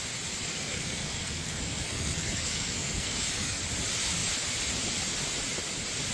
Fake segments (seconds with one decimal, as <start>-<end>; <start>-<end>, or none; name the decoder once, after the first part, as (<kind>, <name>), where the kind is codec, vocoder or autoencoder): 0.4-3.6 (codec, SNAC)